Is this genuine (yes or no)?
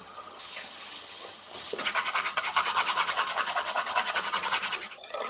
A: no